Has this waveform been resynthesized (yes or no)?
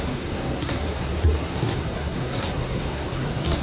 yes